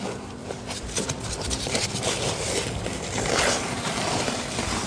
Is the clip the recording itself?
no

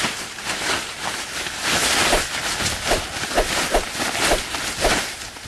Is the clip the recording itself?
yes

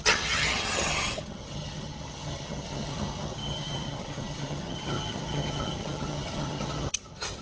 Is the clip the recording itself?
no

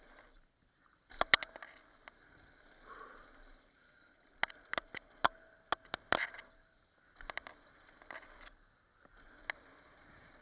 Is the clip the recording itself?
yes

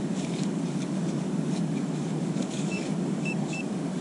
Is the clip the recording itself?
no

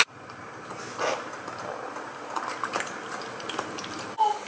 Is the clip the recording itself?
yes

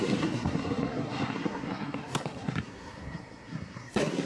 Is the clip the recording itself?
no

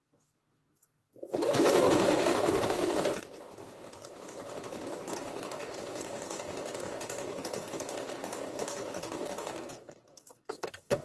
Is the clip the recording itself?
no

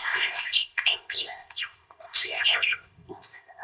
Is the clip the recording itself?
no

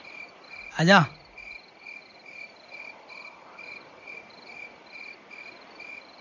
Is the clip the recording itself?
no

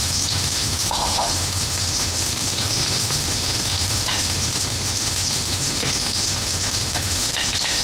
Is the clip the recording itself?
no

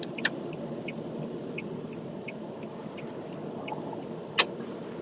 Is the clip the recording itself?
yes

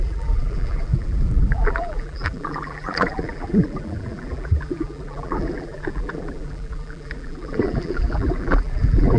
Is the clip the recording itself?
no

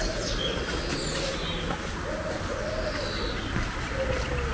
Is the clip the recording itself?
yes